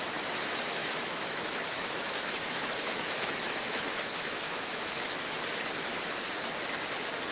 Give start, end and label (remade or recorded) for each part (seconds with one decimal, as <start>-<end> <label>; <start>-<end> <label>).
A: 0.0-0.8 recorded; 0.8-5.2 remade; 5.2-7.3 recorded